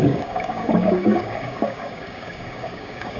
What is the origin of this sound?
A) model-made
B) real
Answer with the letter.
A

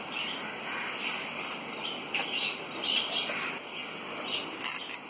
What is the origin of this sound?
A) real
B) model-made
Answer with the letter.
A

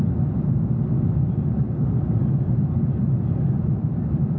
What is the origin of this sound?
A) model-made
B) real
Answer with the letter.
B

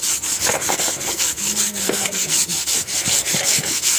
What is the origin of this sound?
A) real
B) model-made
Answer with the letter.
B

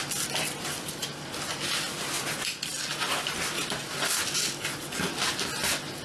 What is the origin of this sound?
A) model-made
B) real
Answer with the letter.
B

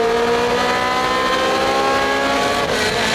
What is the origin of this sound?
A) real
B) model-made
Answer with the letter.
A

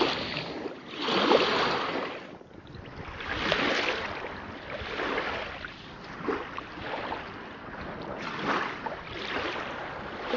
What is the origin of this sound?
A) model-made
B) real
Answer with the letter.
B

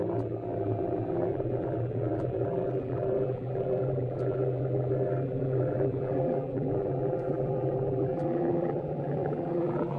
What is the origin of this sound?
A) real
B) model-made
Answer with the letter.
B